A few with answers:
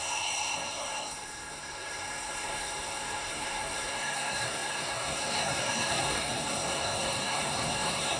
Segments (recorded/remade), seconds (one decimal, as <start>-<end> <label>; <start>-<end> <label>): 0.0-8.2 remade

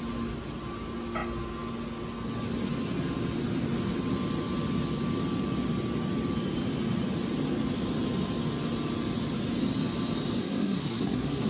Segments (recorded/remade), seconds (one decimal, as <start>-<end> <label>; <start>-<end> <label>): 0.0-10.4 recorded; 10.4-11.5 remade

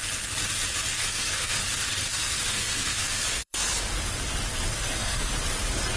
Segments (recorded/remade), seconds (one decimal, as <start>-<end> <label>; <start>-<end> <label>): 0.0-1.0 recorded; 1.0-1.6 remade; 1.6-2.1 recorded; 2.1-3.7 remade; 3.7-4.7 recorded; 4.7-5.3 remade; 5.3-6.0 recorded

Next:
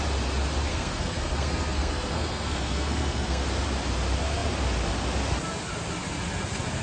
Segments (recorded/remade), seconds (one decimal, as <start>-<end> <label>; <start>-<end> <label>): 0.0-0.7 recorded; 0.7-3.4 remade; 3.4-6.8 recorded